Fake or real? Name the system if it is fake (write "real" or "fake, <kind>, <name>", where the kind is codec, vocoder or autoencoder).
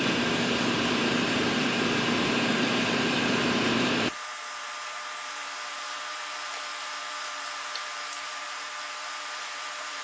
fake, vocoder, BigVGAN v2